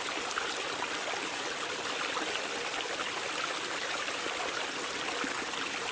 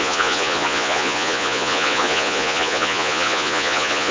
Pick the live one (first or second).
first